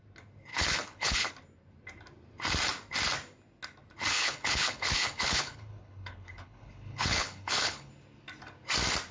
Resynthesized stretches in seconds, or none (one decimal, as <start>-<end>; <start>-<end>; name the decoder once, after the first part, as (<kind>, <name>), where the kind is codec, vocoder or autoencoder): 0.5-1.3 (codec, HILCodec); 4.1-7.9